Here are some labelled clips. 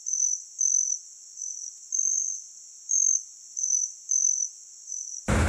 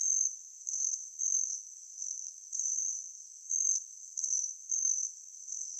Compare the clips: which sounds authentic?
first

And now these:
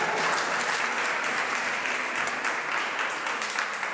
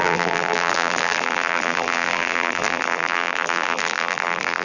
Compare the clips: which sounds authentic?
first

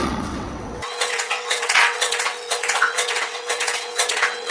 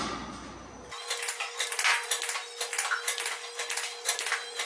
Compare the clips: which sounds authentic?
second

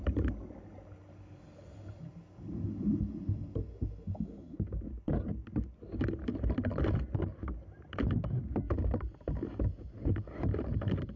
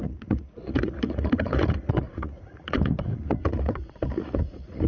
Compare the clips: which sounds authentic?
first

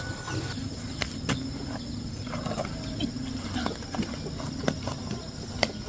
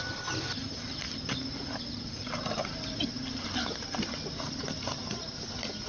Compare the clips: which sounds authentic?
first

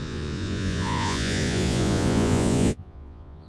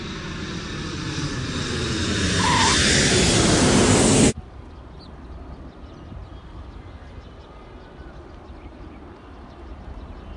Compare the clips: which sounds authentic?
second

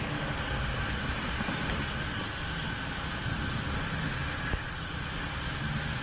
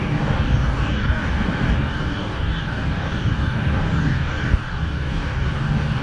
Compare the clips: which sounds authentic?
first